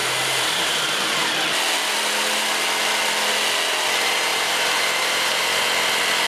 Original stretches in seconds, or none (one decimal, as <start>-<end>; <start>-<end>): 1.3-4.3; 5.7-6.3